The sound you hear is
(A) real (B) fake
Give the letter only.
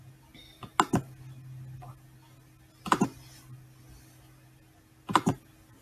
A